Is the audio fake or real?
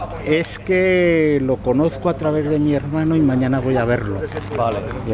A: real